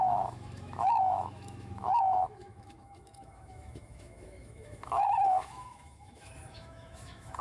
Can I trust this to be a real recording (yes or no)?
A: no